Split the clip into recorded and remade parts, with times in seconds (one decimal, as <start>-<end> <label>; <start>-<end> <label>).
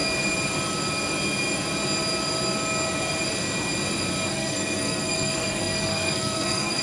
0.0-4.3 recorded; 4.3-6.8 remade